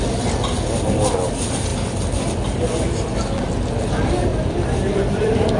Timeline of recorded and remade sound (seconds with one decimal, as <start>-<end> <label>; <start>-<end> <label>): 0.0-4.3 recorded; 4.3-5.6 remade